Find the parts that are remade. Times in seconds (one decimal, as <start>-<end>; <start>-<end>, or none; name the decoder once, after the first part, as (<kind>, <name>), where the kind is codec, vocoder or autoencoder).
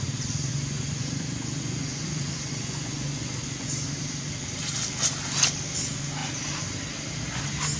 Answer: 0.5-3.8 (vocoder, Vocos)